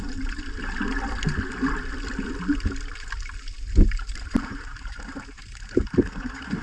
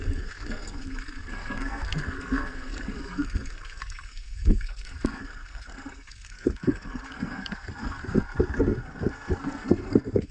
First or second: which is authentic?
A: first